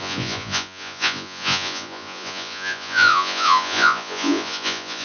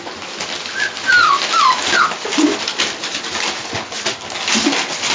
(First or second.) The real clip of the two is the second